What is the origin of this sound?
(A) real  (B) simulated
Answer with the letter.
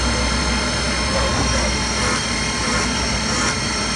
A